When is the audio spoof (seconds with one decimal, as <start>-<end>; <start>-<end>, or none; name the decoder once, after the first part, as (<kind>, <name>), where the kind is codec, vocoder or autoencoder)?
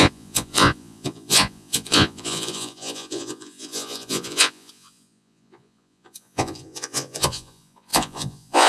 0.0-8.7 (vocoder, Vocos)